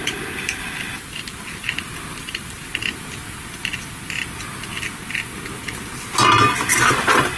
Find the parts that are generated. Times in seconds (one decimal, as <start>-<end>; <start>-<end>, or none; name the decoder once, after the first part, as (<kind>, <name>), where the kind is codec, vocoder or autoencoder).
0.0-3.2 (vocoder, BigVGAN v2); 6.7-7.4